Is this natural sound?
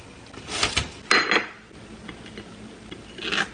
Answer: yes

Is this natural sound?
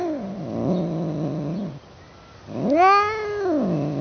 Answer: yes